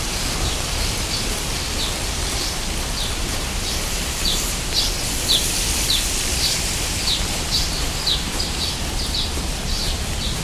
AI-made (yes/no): yes